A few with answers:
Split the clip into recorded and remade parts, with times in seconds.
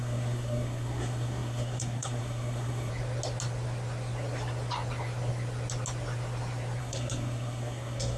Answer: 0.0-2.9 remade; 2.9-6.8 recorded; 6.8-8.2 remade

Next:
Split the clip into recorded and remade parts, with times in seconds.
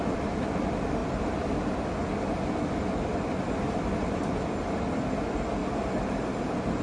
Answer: 0.0-1.0 remade; 1.0-5.1 recorded; 5.1-5.6 remade; 5.6-6.1 recorded; 6.1-6.8 remade